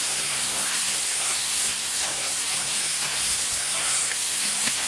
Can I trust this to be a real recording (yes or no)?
no